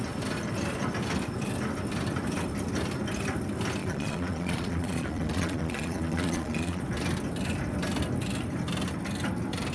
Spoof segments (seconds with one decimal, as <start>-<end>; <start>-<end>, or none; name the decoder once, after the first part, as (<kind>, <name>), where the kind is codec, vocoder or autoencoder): 3.8-6.8 (vocoder, Vocos)